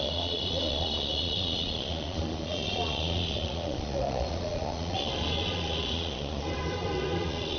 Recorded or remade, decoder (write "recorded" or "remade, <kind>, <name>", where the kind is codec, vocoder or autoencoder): remade, vocoder, Vocos